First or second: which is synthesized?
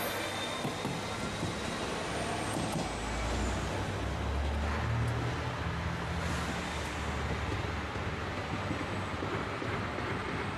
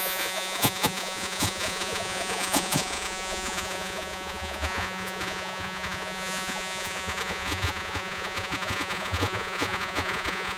second